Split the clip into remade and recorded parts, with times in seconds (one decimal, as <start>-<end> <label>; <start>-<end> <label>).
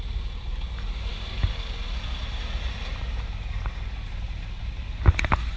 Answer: 0.0-5.6 recorded